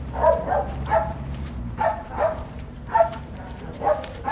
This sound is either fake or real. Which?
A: fake